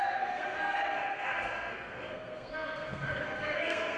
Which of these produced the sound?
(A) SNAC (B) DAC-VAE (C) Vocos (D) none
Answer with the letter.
A